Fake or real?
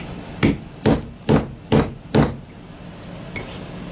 real